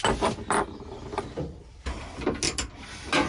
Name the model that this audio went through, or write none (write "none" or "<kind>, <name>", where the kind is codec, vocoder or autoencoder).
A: none